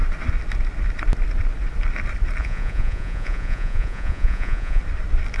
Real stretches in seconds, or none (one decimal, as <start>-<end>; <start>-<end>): 0.0-2.4; 4.8-5.4